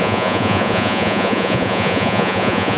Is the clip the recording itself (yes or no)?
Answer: no